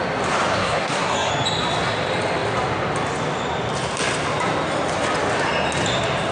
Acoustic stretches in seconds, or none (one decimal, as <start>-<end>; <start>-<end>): 0.0-0.6; 1.3-6.3